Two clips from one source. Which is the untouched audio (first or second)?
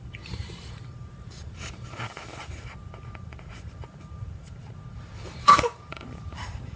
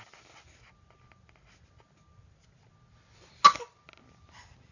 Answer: second